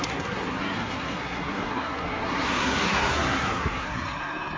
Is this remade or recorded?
remade